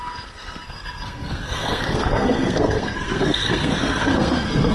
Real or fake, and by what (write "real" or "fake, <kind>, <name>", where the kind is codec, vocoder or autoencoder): fake, codec, SNAC